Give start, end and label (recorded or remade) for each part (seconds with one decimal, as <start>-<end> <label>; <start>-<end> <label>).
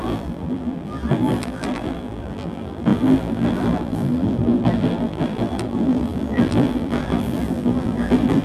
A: 0.0-8.4 remade